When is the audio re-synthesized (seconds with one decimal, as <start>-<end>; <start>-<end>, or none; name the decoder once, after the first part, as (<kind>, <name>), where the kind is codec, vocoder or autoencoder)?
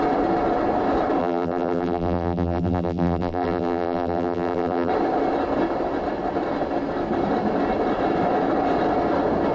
1.2-4.9 (vocoder, BigVGAN v2)